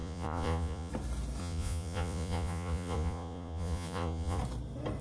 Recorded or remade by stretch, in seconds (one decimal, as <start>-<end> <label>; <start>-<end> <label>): 0.0-0.9 remade; 0.9-1.4 recorded; 1.4-4.4 remade; 4.4-5.0 recorded